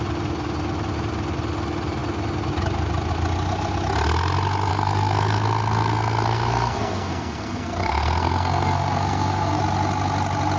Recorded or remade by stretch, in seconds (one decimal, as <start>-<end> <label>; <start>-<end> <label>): 0.0-4.7 recorded; 4.7-9.6 remade; 9.6-10.6 recorded

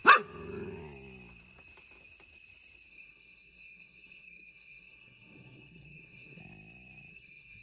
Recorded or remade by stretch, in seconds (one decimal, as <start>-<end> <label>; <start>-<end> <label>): 0.0-2.9 recorded; 2.9-6.4 remade; 6.4-7.1 recorded; 7.1-7.6 remade

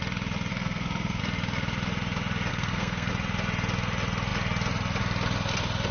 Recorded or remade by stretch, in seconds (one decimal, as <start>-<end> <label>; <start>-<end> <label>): 0.0-0.5 recorded; 0.5-1.2 remade; 1.2-2.5 recorded; 2.5-3.1 remade; 3.1-5.9 recorded

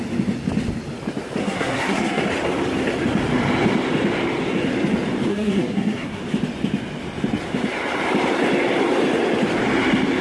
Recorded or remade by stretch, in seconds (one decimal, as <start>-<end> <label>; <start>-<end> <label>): 0.0-1.4 recorded; 1.4-2.2 remade; 2.2-5.3 recorded; 5.3-6.2 remade; 6.2-10.2 recorded

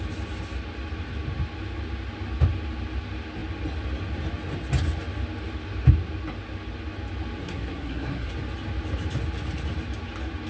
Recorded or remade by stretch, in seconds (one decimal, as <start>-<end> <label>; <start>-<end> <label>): 0.0-7.4 recorded; 7.4-8.3 remade; 8.3-10.5 recorded

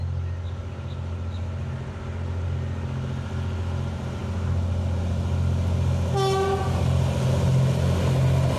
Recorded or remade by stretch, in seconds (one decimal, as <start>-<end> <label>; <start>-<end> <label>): 0.0-8.6 recorded